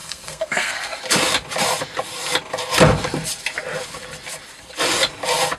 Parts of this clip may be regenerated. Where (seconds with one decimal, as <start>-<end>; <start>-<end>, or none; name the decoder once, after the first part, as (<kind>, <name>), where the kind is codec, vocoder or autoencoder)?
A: 0.0-1.0 (codec, SNAC)